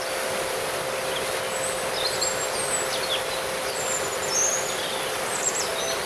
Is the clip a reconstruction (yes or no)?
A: no